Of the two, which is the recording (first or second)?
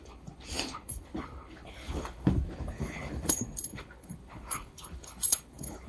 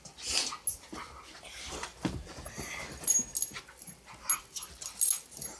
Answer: second